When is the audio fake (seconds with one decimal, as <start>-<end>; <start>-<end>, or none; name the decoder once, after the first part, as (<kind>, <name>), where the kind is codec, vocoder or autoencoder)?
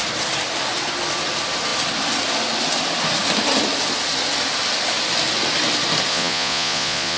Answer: 6.1-7.2 (vocoder, Vocos)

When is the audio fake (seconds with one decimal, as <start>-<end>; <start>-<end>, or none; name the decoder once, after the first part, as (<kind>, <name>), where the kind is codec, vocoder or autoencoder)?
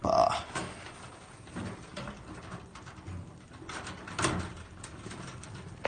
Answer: none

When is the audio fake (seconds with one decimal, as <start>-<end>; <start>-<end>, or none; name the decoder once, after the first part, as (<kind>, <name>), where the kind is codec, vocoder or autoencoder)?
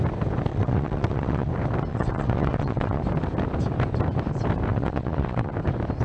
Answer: 0.5-1.5 (vocoder, WaveNeXt); 1.9-3.0; 4.7-5.5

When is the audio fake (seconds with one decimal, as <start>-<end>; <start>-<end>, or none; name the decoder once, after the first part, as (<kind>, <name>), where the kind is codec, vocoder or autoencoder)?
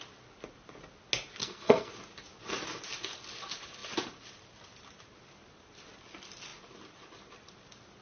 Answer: 1.4-1.9 (codec, SNAC)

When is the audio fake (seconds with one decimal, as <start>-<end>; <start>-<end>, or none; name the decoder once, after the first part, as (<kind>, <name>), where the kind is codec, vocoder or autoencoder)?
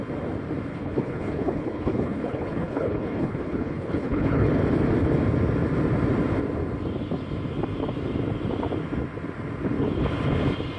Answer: 0.7-4.5 (codec, HILCodec)